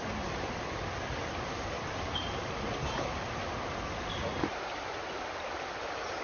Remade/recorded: remade